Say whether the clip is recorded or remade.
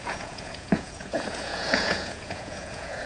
remade